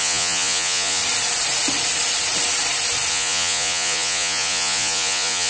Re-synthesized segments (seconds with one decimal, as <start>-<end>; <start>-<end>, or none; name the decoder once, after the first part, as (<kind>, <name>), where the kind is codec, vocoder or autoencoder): 0.0-1.0 (vocoder, Vocos); 3.1-5.5